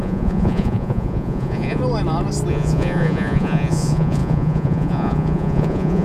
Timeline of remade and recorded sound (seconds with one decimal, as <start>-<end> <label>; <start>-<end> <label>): 0.0-1.8 remade; 1.8-2.5 recorded; 2.5-6.0 remade